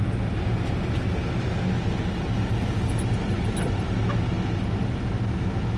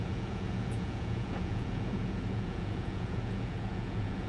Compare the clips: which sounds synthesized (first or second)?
second